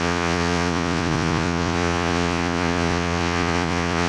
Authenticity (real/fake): fake